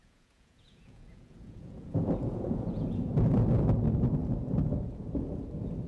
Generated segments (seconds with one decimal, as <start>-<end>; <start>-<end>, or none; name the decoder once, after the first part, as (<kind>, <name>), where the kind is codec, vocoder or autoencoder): 0.0-3.1 (vocoder, Vocos)